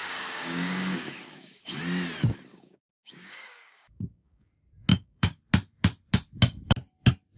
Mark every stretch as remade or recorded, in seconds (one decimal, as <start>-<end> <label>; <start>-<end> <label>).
0.0-1.8 remade; 1.8-2.5 recorded; 2.5-4.5 remade; 4.5-4.9 recorded; 4.9-5.4 remade; 5.4-7.4 recorded